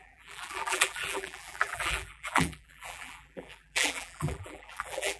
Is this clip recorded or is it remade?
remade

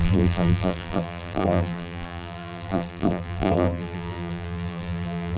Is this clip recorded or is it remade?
remade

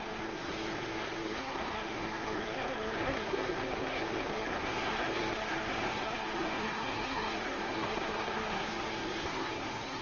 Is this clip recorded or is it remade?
remade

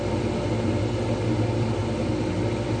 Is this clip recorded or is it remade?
recorded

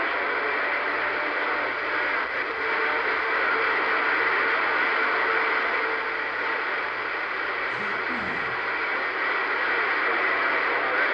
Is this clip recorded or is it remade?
recorded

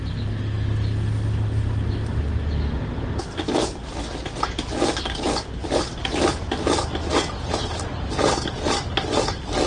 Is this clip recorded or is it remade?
recorded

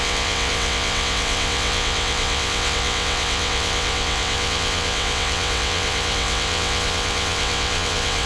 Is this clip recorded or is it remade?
remade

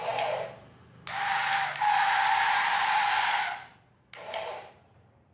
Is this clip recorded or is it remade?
recorded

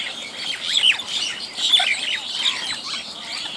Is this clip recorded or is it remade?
remade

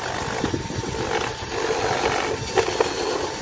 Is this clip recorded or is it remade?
recorded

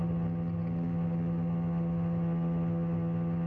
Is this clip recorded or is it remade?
recorded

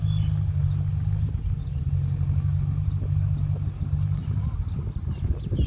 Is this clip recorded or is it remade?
recorded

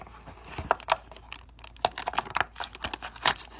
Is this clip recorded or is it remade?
recorded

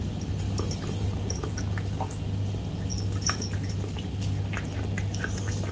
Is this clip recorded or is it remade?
recorded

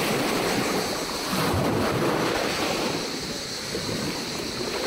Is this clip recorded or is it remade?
recorded